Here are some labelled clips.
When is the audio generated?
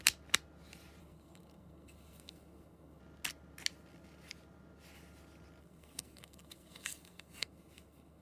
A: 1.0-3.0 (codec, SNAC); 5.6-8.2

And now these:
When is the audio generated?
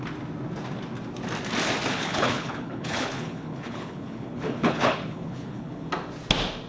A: 1.9-5.9 (codec, HILCodec)